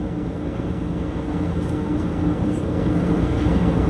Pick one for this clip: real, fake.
fake